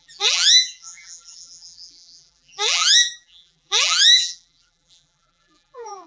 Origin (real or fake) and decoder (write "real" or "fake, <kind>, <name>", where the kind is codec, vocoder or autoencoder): fake, vocoder, BigVGAN v2